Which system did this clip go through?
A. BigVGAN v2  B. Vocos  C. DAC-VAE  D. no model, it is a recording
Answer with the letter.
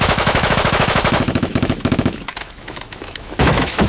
C